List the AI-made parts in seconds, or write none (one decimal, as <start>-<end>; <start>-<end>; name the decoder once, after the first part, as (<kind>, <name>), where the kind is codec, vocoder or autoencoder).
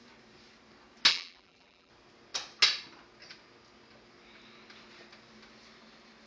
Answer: 1.1-1.9 (vocoder, BigVGAN v2)